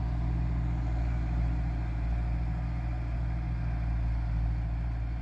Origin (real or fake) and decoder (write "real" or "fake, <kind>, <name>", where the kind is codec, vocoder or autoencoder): real